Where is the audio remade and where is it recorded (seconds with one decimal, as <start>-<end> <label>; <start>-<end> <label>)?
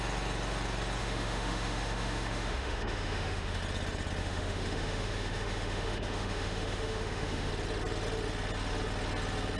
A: 0.0-1.0 recorded; 1.0-3.6 remade; 3.6-4.2 recorded; 4.2-7.5 remade; 7.5-9.6 recorded